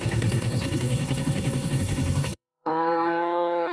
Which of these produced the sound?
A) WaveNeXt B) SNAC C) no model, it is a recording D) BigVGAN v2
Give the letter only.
B